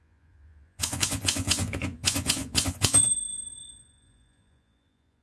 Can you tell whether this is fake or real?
fake